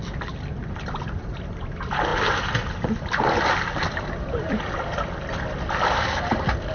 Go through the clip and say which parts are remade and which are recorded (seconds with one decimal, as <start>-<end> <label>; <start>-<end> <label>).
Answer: 0.0-6.7 recorded